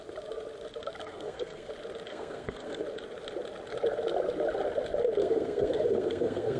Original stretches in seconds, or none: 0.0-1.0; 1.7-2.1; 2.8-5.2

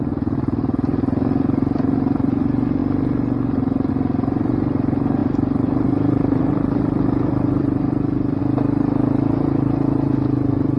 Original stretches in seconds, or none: 0.0-5.2; 8.4-10.8

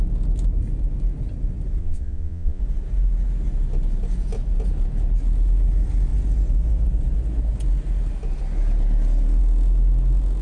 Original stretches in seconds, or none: 0.0-1.8; 2.6-10.4

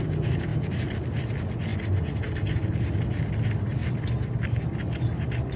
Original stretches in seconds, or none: 0.0-1.7; 2.9-5.6

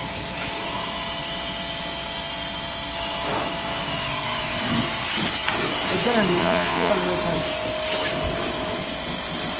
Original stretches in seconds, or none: 0.0-6.4; 6.9-9.6

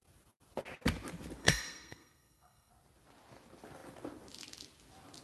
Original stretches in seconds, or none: 0.0-1.4; 2.7-5.2